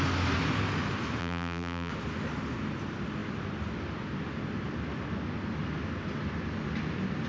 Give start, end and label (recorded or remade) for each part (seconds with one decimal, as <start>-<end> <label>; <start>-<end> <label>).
0.0-1.2 recorded; 1.2-1.9 remade; 1.9-7.3 recorded

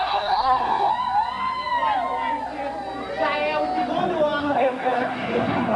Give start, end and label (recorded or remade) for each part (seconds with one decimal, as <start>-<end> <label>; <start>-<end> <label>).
0.0-0.9 remade; 0.9-4.4 recorded; 4.4-5.8 remade

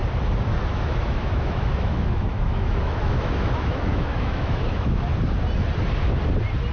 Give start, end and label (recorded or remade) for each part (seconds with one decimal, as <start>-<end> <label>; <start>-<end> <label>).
0.0-0.7 recorded; 0.7-5.1 remade; 5.1-6.7 recorded

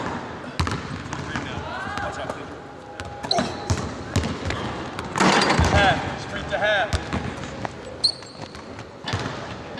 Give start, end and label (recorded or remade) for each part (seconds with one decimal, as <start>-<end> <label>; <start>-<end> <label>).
0.0-9.8 recorded

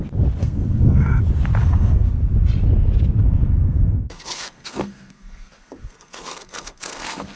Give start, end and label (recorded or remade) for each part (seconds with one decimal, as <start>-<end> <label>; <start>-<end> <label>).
0.0-0.4 recorded; 0.4-1.2 remade; 1.2-1.6 recorded; 1.6-2.2 remade; 2.2-3.2 recorded; 3.2-7.4 remade

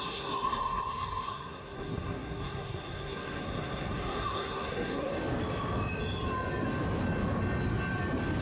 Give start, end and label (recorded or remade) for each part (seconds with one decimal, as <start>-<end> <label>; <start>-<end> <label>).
0.0-5.1 remade; 5.1-8.4 recorded

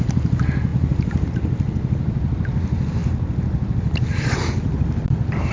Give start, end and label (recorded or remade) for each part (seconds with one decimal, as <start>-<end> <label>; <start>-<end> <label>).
0.0-5.5 recorded